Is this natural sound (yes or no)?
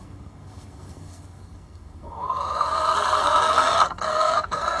no